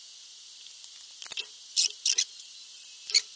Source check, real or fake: real